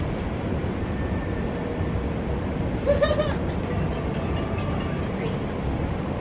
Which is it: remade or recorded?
remade